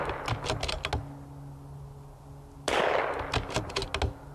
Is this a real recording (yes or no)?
yes